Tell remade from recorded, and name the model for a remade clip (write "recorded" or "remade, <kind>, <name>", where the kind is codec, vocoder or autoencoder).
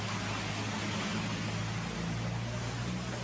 recorded